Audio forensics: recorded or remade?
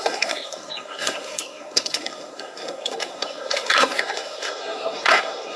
remade